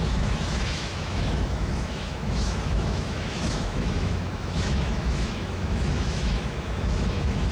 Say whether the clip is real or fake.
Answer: fake